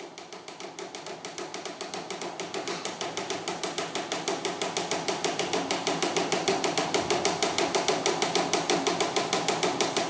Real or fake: real